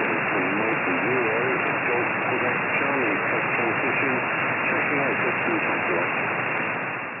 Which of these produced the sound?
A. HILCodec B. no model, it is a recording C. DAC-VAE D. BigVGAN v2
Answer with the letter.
B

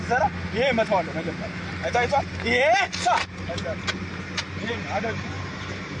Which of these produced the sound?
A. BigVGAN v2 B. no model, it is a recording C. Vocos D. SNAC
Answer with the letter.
B